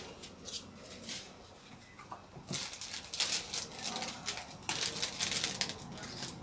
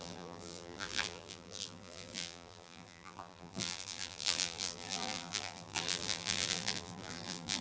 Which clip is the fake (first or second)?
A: second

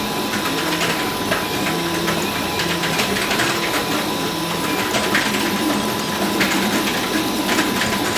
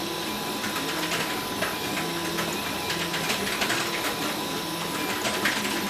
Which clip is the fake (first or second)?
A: first